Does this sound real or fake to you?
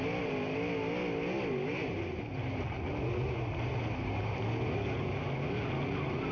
real